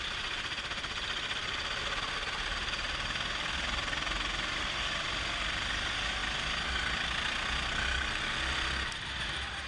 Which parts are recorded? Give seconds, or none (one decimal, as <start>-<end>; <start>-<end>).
0.0-9.7